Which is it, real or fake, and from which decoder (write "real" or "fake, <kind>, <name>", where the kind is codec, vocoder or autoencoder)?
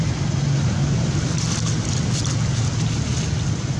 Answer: real